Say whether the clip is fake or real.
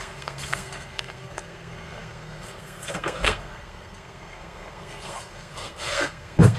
fake